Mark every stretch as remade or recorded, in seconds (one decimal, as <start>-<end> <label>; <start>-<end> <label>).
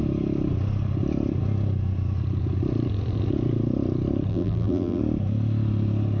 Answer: 0.0-4.3 recorded; 4.3-5.0 remade; 5.0-6.2 recorded